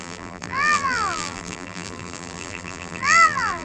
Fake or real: fake